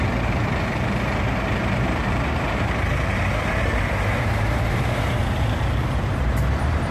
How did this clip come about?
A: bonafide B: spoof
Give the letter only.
B